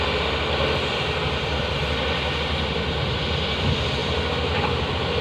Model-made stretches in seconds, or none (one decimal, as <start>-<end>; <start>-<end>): 0.0-5.2